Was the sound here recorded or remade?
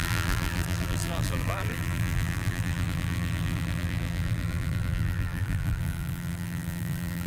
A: remade